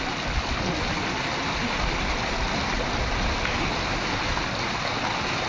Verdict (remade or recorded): recorded